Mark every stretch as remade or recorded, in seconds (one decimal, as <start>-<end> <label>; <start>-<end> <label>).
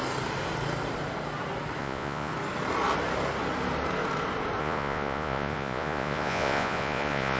0.0-1.8 recorded; 1.8-2.3 remade; 2.3-4.6 recorded; 4.6-7.4 remade